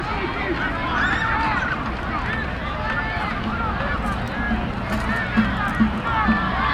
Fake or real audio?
real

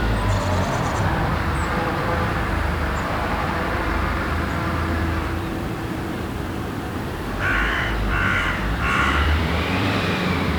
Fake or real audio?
fake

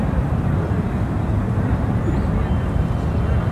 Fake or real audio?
fake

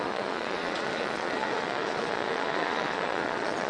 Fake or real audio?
fake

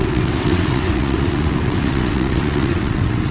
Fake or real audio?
fake